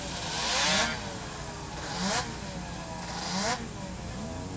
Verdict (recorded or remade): recorded